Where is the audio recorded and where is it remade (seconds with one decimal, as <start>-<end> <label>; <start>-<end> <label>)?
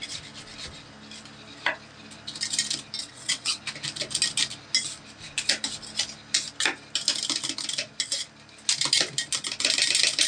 0.0-3.0 recorded; 3.0-3.6 remade; 3.6-10.3 recorded